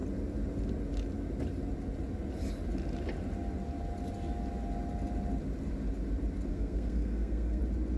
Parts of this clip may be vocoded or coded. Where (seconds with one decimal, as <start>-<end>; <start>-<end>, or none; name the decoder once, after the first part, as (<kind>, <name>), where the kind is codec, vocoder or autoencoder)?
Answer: 6.5-7.6 (codec, SNAC)